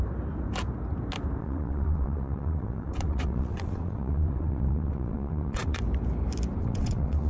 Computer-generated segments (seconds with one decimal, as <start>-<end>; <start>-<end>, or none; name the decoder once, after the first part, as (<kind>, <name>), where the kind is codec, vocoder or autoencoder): 1.4-5.8 (vocoder, WaveNeXt); 6.6-7.3